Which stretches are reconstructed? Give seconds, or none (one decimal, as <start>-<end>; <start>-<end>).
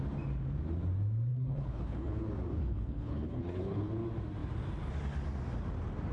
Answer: 1.3-2.2; 2.6-3.9